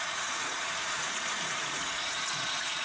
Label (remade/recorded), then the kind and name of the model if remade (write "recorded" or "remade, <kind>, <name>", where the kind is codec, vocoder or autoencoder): remade, vocoder, Vocos